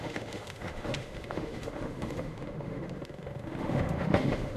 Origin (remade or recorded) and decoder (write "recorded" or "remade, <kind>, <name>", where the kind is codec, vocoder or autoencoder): remade, autoencoder, DAC-VAE